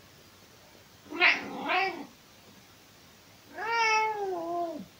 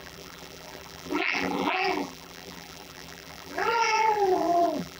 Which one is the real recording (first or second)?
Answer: first